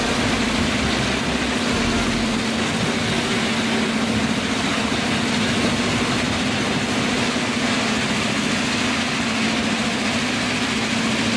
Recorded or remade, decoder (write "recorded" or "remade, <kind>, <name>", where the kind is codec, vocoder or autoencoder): recorded